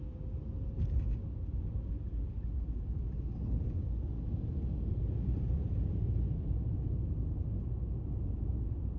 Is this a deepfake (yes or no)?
no